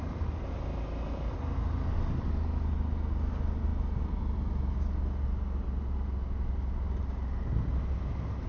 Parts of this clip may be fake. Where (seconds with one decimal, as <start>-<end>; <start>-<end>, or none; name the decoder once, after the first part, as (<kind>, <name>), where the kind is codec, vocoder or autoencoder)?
none